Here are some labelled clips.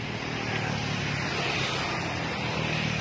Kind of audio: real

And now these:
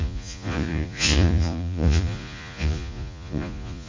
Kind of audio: fake